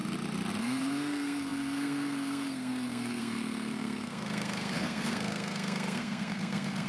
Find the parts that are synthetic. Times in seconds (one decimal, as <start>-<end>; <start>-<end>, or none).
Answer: 0.6-6.9